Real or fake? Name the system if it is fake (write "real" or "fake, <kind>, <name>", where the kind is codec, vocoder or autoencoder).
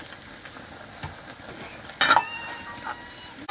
real